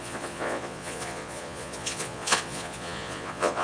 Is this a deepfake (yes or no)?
yes